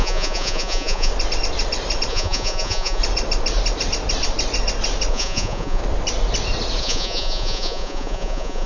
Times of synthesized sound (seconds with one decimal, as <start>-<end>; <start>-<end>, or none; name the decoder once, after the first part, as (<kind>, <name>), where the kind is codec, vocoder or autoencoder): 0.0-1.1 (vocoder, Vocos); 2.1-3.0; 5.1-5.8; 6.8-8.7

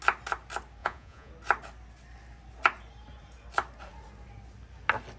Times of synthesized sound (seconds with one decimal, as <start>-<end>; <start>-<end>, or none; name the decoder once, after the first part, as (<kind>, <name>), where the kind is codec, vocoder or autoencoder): 0.8-1.3 (vocoder, Vocos)

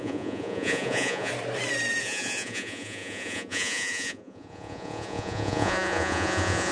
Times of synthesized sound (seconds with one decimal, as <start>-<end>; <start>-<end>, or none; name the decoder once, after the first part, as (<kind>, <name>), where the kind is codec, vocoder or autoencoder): 0.0-1.3 (vocoder, Vocos); 2.0-6.7

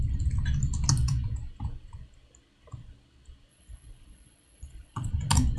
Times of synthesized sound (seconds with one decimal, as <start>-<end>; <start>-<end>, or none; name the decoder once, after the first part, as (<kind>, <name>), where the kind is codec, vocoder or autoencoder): 3.5-5.1 (vocoder, Vocos)

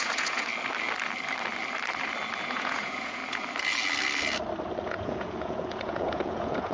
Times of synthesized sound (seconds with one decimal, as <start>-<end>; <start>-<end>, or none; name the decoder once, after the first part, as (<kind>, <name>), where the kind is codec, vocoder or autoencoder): 0.0-0.5 (vocoder, Vocos); 2.4-3.2; 4.8-6.7